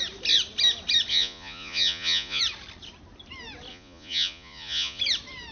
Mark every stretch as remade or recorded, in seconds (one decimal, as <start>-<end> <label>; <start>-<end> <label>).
0.0-1.1 recorded; 1.1-2.4 remade; 2.4-3.7 recorded; 3.7-5.0 remade; 5.0-5.5 recorded